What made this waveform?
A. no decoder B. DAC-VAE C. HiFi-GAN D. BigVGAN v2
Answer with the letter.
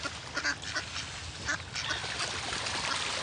A